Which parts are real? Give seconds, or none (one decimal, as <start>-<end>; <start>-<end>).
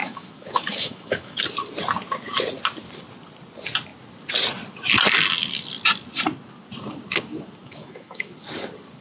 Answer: 1.4-7.6; 8.3-9.0